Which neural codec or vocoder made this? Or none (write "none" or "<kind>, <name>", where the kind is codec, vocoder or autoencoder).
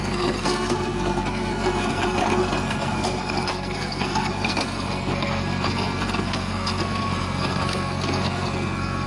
codec, SNAC